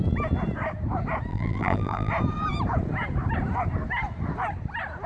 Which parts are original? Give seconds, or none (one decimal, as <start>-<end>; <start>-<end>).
0.0-1.3; 2.1-5.1